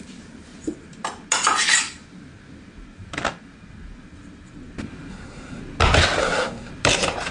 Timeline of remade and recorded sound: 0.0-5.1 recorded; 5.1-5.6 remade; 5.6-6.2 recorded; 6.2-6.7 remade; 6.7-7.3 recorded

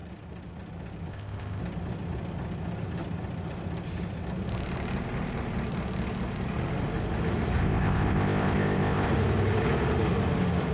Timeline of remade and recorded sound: 0.0-1.1 recorded; 1.1-1.6 remade; 1.6-7.6 recorded; 7.6-9.1 remade; 9.1-10.7 recorded